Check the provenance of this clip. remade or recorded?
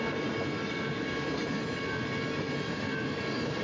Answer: recorded